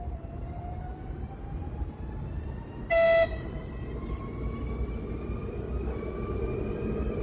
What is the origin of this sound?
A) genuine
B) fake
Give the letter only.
A